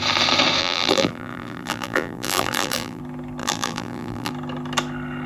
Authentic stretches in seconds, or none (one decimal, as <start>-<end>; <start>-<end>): 0.0-0.6; 3.0-3.4; 4.3-5.3